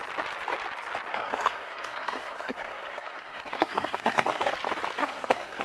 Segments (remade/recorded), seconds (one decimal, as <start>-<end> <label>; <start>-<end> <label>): 0.0-1.1 recorded; 1.1-4.5 remade; 4.5-5.0 recorded; 5.0-5.6 remade